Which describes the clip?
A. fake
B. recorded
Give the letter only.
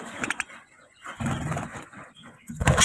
A